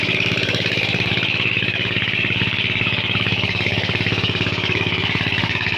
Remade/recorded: remade